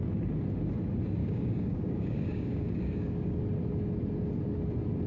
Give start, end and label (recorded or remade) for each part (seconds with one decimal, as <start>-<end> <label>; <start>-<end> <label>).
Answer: 0.0-1.2 recorded; 1.2-3.4 remade; 3.4-5.1 recorded